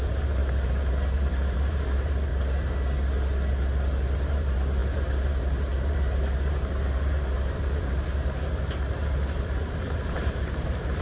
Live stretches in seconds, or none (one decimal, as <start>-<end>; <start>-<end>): 2.3-4.2